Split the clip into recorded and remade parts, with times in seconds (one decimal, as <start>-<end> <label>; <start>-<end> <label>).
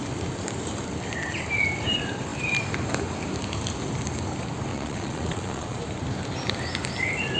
0.0-4.7 recorded; 4.7-5.8 remade; 5.8-7.4 recorded